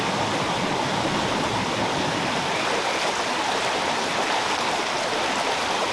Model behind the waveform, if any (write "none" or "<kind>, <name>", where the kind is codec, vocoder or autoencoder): none